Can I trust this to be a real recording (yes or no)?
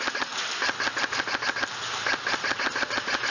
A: yes